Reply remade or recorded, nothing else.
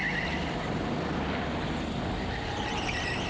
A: recorded